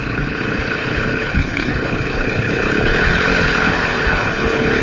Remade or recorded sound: remade